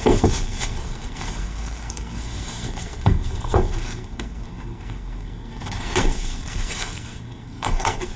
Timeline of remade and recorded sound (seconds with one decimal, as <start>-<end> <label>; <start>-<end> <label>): 0.0-8.2 remade